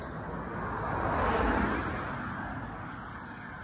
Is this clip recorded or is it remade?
recorded